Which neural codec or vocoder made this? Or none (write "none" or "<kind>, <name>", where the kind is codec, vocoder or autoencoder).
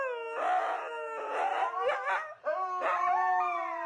none